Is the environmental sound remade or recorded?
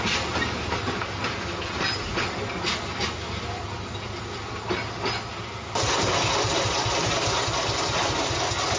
recorded